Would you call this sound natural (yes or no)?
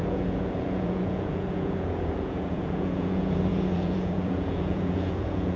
no